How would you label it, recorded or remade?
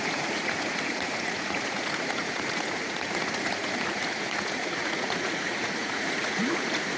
remade